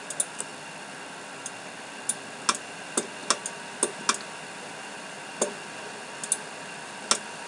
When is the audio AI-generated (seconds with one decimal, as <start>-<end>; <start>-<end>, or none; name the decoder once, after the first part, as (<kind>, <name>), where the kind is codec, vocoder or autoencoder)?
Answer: none